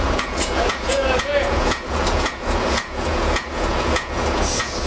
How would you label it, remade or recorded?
remade